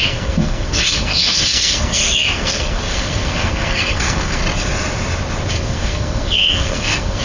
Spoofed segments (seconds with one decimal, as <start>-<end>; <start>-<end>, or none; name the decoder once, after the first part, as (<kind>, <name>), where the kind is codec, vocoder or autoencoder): 0.0-4.4 (codec, SNAC); 5.5-7.2